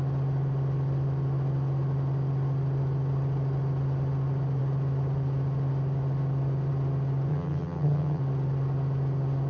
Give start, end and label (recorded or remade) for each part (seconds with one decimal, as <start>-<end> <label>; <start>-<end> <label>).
0.0-7.3 recorded; 7.3-8.2 remade; 8.2-9.5 recorded